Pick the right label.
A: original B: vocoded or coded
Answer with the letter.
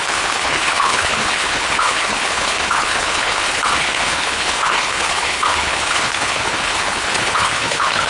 B